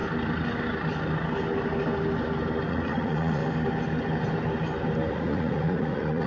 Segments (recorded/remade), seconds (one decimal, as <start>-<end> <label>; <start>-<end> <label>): 0.0-2.7 recorded; 2.7-3.4 remade; 3.4-5.1 recorded; 5.1-6.3 remade